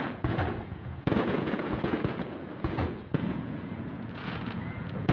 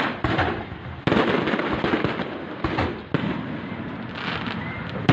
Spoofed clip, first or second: first